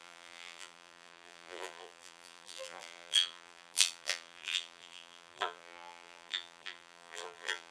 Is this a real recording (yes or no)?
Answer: no